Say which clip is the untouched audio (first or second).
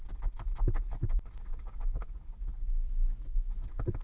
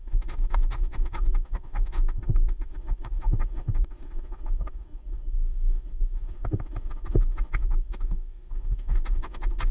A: first